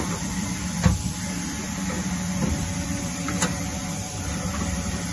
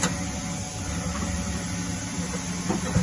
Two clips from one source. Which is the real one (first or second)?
second